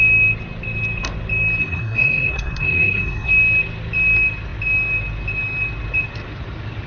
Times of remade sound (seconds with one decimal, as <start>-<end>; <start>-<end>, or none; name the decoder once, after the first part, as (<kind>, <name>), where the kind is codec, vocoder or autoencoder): 1.6-3.3 (codec, SNAC)